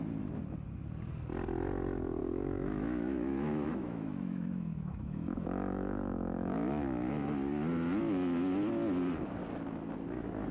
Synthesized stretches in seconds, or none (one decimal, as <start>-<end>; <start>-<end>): 2.2-7.1